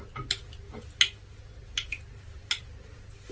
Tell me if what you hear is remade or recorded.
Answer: recorded